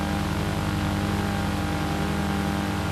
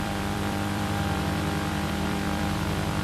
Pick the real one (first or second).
first